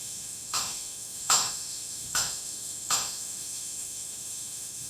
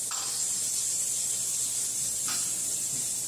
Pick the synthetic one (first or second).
first